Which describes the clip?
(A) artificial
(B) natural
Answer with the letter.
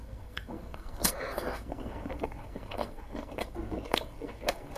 A